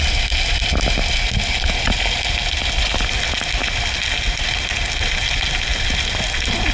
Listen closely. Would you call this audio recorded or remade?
recorded